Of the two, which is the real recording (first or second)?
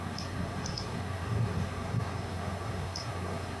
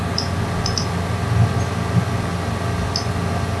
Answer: second